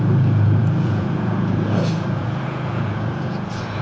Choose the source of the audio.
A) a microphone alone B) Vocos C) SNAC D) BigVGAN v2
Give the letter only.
B